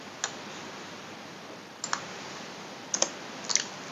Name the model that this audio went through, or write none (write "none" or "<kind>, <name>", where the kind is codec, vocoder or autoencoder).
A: none